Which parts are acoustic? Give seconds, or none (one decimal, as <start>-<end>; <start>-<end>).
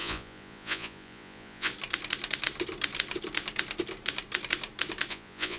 1.7-5.1